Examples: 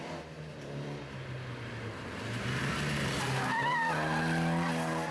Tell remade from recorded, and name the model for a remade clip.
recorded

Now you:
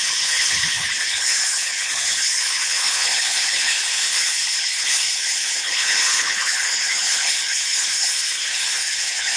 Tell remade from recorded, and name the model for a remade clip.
remade, codec, HILCodec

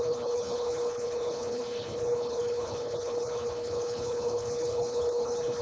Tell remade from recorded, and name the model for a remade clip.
remade, codec, HILCodec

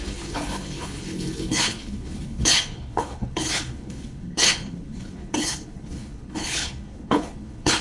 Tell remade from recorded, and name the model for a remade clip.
remade, codec, HILCodec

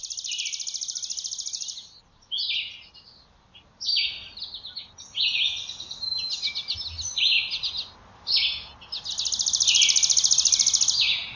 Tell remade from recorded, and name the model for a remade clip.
recorded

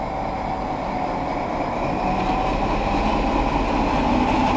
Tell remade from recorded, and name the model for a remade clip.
recorded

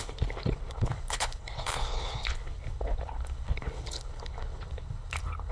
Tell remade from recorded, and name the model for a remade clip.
remade, codec, HILCodec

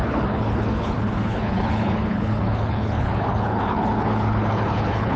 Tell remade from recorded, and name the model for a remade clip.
remade, codec, HILCodec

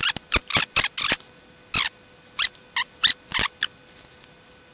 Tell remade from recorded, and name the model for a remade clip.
recorded